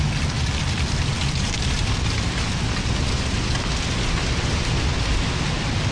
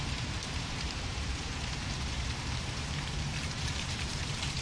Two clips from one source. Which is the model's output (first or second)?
second